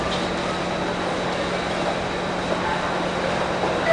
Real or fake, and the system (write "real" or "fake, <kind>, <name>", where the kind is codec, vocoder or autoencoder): real